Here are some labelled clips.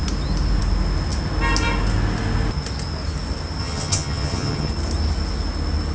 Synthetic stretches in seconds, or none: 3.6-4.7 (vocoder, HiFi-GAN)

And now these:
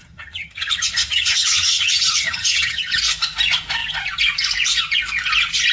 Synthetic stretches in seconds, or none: 0.0-2.9 (vocoder, HiFi-GAN)